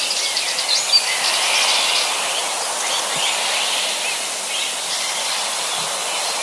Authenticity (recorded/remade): recorded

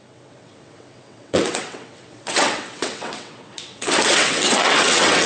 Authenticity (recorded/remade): remade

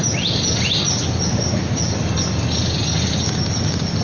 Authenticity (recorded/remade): recorded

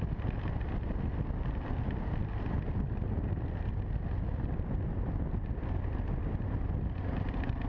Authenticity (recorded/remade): recorded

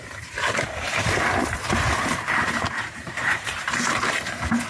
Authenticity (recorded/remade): remade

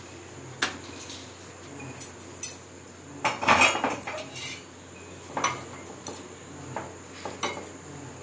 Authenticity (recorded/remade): recorded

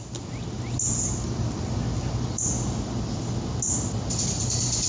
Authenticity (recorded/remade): recorded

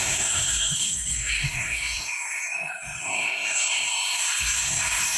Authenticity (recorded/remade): remade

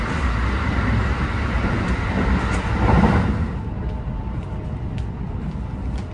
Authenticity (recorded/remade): recorded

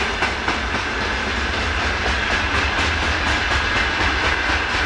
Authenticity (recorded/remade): recorded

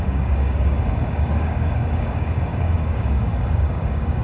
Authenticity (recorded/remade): remade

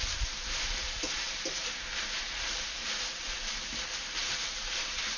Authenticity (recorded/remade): remade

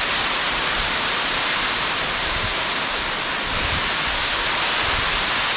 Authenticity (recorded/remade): recorded